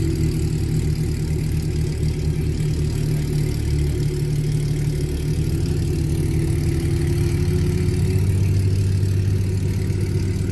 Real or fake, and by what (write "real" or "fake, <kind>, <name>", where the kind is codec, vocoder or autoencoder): real